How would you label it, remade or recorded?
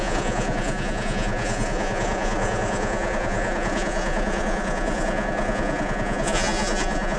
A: remade